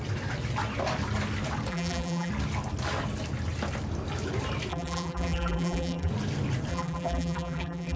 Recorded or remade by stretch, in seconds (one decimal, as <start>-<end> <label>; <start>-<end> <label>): 0.0-1.7 recorded; 1.7-2.3 remade; 2.3-4.7 recorded; 4.7-6.1 remade; 6.1-6.7 recorded; 6.7-8.0 remade